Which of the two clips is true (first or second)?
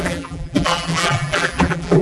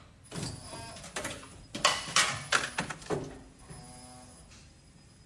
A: second